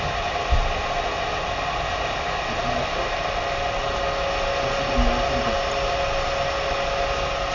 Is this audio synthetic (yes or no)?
no